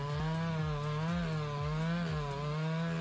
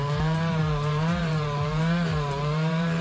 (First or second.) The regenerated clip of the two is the second